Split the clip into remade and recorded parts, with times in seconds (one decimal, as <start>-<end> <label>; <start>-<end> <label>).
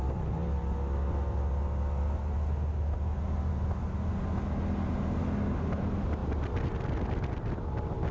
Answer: 0.0-8.1 recorded